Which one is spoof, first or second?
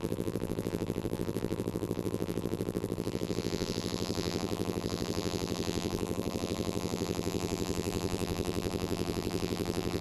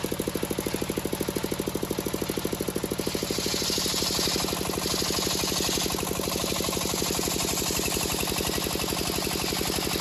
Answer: first